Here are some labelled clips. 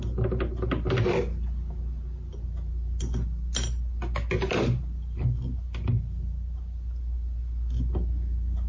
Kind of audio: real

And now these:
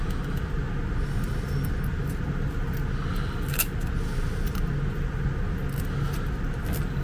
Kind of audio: real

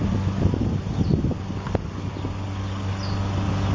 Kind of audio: real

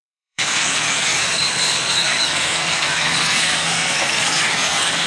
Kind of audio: fake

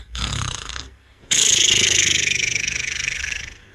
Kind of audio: fake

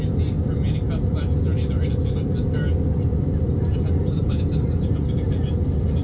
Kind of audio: real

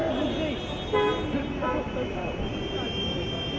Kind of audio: real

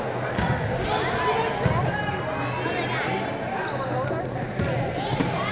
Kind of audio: real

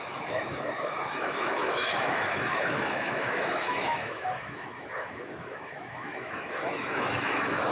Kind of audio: fake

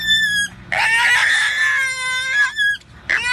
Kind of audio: real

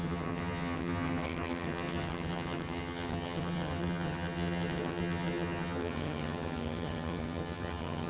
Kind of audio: fake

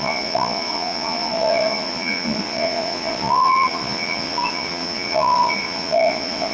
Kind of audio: fake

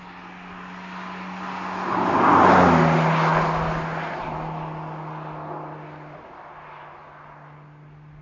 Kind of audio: real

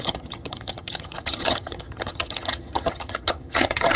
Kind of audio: fake